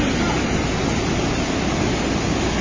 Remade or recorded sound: recorded